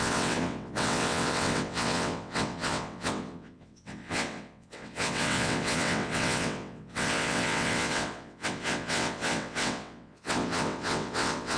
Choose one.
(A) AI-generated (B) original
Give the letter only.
A